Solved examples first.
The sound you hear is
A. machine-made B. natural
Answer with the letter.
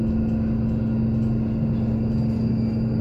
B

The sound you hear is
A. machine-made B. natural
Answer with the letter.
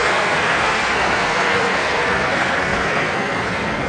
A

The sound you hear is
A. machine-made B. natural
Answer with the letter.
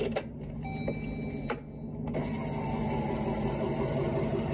B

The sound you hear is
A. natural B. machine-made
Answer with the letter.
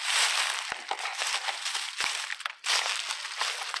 A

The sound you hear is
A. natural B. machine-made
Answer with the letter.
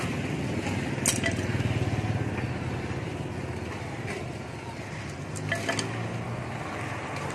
A